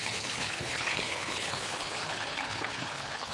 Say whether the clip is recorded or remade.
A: remade